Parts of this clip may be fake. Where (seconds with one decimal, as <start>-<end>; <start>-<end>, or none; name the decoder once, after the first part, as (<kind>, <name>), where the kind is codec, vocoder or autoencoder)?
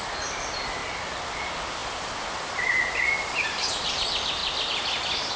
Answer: 0.0-0.8 (vocoder, BigVGAN v2); 1.3-4.4